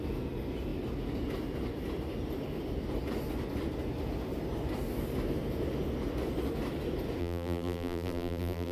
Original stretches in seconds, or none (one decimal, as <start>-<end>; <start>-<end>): 0.0-7.2